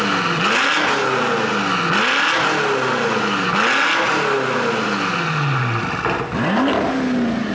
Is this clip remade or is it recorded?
recorded